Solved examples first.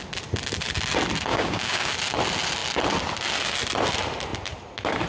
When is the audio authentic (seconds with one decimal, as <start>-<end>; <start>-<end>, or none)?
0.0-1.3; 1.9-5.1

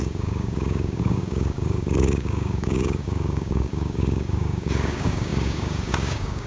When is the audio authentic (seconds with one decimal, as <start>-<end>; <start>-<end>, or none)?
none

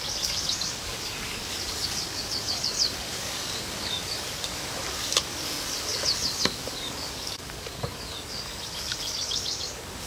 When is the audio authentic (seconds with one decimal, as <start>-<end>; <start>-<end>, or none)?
none

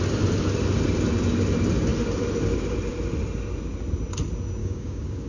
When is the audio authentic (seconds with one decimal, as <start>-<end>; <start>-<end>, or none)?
0.0-4.6

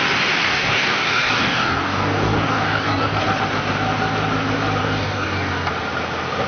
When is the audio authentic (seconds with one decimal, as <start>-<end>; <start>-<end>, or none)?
0.0-0.4; 3.2-4.8; 5.7-6.5